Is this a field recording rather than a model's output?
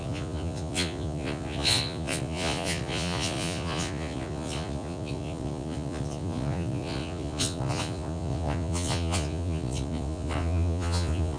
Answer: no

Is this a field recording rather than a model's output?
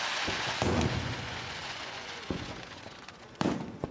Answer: no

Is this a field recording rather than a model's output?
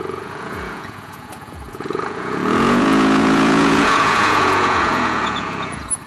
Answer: no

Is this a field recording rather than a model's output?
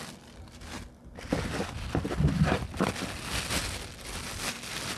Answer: yes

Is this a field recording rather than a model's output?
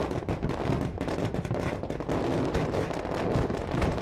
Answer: yes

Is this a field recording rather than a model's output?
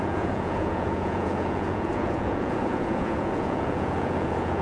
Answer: no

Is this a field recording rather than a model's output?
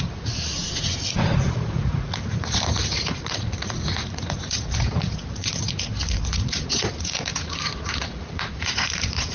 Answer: no